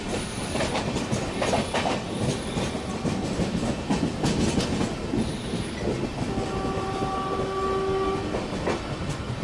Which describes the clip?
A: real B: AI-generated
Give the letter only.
A